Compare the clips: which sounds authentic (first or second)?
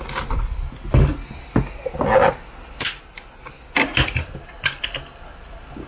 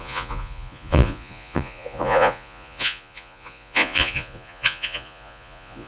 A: first